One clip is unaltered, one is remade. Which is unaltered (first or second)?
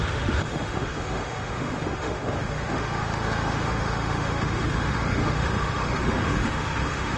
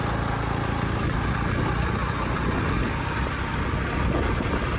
second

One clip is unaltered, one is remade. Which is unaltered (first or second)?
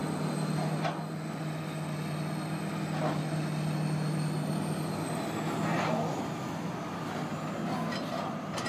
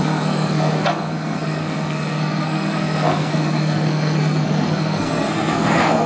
first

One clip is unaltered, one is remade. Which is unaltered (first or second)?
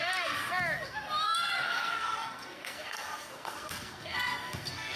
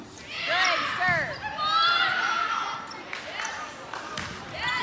second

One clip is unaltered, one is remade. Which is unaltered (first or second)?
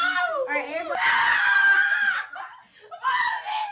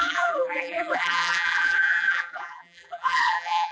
first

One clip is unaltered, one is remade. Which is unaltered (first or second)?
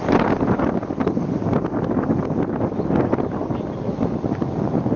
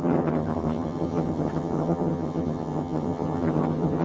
first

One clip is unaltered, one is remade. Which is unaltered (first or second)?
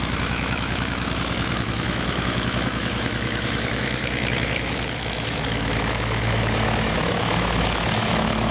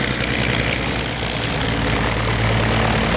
second